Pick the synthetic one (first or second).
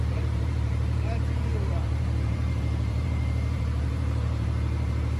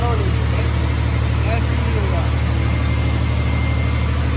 first